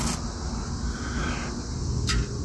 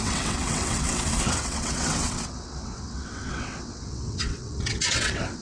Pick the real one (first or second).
first